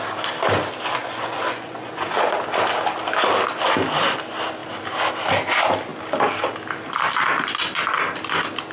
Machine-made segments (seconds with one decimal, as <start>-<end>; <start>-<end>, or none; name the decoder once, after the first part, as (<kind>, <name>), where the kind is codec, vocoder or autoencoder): 1.0-2.3 (vocoder, Vocos)